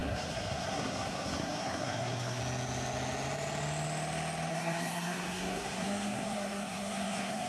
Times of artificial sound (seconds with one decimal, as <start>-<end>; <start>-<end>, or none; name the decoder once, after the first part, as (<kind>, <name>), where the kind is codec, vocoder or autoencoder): 0.0-2.4 (codec, SNAC); 4.5-7.5